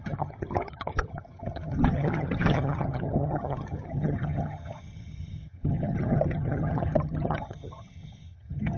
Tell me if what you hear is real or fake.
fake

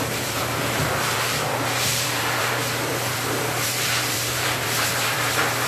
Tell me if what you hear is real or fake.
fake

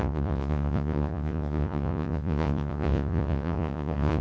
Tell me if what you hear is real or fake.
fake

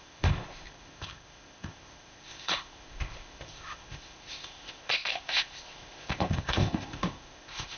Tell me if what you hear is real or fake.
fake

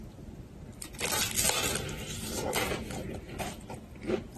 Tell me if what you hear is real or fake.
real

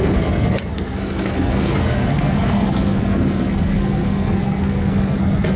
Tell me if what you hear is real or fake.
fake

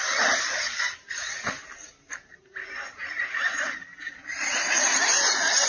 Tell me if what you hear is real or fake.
real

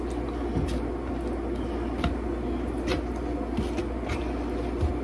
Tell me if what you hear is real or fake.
real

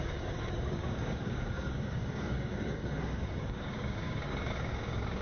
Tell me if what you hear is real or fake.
fake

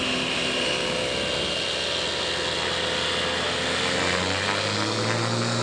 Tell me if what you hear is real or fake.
real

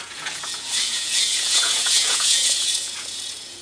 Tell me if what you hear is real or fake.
fake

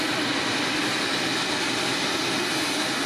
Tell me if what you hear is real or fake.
fake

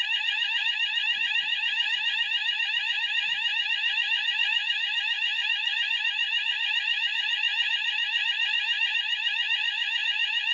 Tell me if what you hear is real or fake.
fake